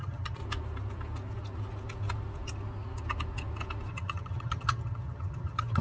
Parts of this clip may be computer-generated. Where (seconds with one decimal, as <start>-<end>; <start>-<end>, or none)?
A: 0.0-0.4; 3.9-5.8